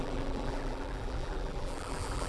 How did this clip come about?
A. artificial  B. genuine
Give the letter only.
A